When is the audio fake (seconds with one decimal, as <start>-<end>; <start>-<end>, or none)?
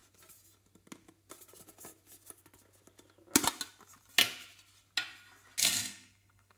5.6-6.6